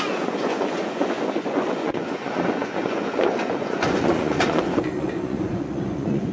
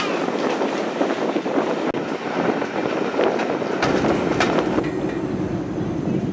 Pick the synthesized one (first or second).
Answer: first